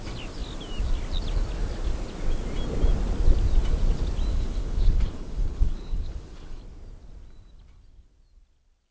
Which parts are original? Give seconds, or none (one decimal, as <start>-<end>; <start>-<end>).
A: 0.0-4.3; 6.6-8.9